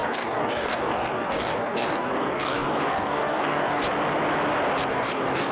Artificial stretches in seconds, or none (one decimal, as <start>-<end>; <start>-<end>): 0.0-3.8; 4.9-5.5

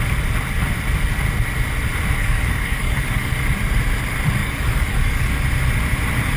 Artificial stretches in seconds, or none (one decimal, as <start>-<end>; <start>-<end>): 2.2-3.3; 4.4-5.3

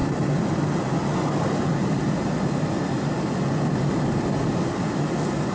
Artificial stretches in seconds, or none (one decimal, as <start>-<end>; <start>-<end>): none

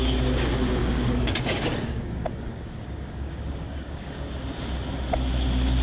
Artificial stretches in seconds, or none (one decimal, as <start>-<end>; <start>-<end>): 0.8-4.3

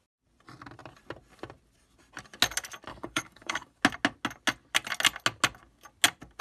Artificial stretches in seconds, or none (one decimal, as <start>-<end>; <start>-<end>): 2.9-3.8

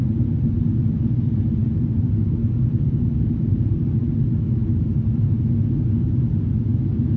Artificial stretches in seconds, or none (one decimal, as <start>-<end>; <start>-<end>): none